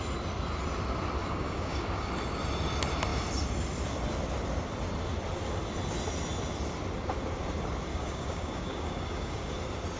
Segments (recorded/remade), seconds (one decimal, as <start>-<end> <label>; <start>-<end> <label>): 0.0-1.2 recorded; 1.2-2.1 remade; 2.1-7.9 recorded; 7.9-9.5 remade; 9.5-10.0 recorded